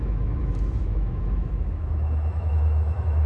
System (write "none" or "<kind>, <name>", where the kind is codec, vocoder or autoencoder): autoencoder, DAC-VAE